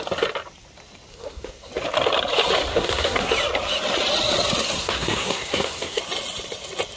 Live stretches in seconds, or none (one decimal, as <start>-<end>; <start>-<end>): 0.0-1.1; 1.7-2.7; 3.3-4.8; 6.0-7.0